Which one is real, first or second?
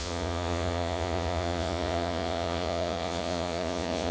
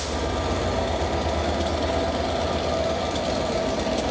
second